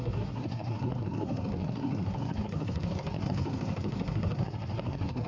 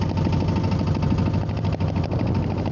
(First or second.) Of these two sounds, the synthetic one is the first